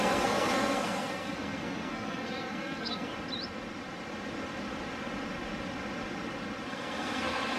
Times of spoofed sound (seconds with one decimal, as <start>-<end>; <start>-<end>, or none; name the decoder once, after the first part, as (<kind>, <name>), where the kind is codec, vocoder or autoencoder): 0.0-3.1 (codec, SNAC); 6.7-7.6